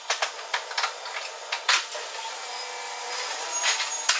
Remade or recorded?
recorded